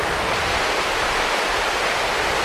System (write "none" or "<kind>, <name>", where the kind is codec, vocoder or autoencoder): none